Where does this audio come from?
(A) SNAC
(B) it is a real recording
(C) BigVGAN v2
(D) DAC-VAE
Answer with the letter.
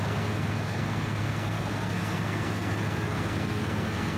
A